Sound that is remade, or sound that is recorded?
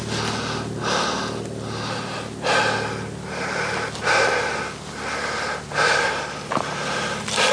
recorded